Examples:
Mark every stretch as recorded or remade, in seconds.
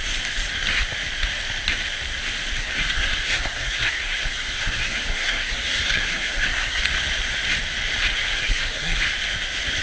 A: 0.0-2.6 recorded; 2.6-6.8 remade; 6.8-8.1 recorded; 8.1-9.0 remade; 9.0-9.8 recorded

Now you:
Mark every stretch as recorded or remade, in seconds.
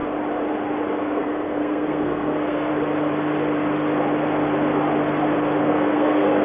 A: 0.0-1.0 recorded; 1.0-2.7 remade; 2.7-5.6 recorded; 5.6-6.4 remade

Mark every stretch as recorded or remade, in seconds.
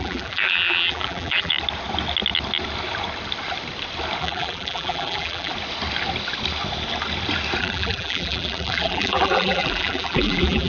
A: 0.0-1.5 remade; 1.5-4.2 recorded; 4.2-5.5 remade; 5.5-7.6 recorded; 7.6-10.7 remade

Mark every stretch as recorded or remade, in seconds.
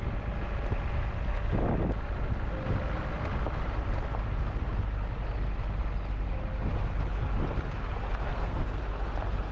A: 0.0-8.3 recorded; 8.3-8.8 remade; 8.8-9.5 recorded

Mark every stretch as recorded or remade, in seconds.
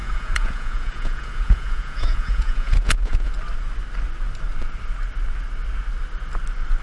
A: 0.0-3.3 remade; 3.3-6.8 recorded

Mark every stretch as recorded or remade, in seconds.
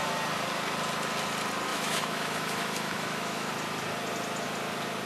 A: 0.0-1.7 recorded; 1.7-3.5 remade; 3.5-5.1 recorded